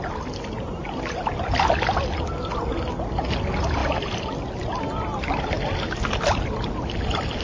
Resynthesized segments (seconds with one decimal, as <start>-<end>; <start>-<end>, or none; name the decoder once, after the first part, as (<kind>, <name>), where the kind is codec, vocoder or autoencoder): none